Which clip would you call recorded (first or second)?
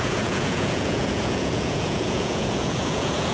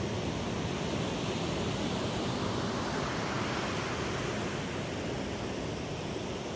second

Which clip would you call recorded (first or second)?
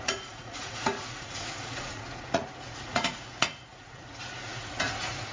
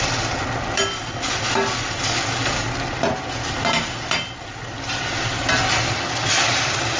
second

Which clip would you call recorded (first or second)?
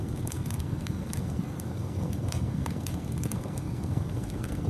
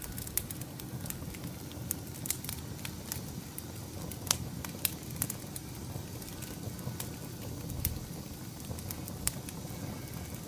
second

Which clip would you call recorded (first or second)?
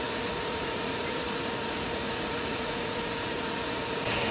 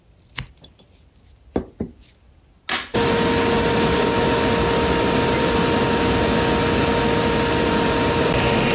second